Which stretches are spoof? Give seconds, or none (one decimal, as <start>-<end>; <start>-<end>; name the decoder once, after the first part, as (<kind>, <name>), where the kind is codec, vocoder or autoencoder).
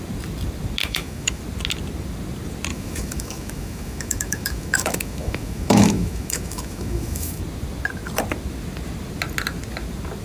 0.8-1.4 (autoencoder, DAC-VAE); 2.7-7.4